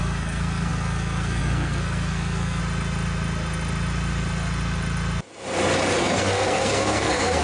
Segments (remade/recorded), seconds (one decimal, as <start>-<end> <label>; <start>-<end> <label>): 0.0-2.6 remade; 2.6-6.0 recorded; 6.0-7.4 remade